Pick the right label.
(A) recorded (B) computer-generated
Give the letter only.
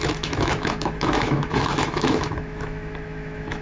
B